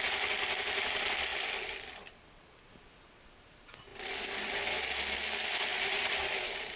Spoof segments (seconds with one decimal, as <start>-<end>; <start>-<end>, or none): 5.7-6.8